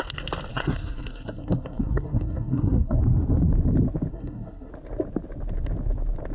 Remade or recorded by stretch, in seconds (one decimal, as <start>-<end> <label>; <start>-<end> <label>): 0.0-0.5 recorded; 0.5-3.0 remade; 3.0-4.1 recorded; 4.1-4.7 remade; 4.7-6.3 recorded